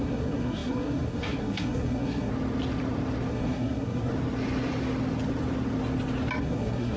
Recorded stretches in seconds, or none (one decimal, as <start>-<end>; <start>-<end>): 2.3-3.3; 4.1-6.4